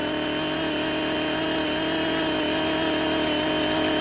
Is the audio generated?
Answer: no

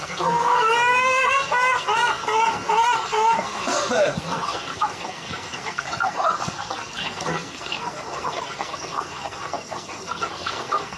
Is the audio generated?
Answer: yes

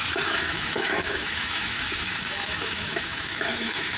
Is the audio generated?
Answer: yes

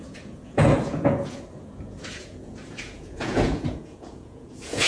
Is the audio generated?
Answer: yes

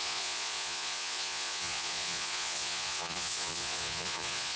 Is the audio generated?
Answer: yes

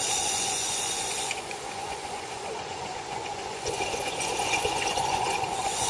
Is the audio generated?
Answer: yes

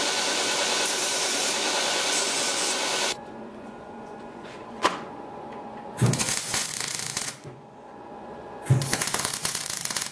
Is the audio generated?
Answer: yes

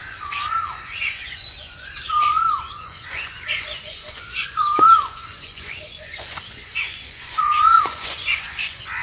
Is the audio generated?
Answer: yes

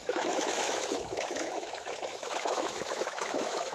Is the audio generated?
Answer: yes